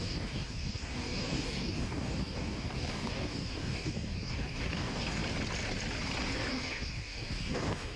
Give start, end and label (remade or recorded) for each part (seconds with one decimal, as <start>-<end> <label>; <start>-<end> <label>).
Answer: 0.0-5.2 remade; 5.2-6.5 recorded; 6.5-8.0 remade